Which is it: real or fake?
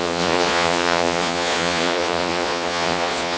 fake